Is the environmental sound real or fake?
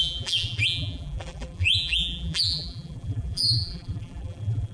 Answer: fake